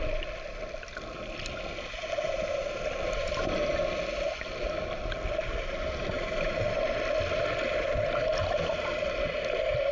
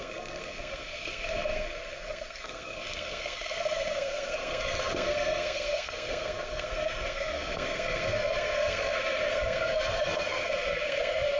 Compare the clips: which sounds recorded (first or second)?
first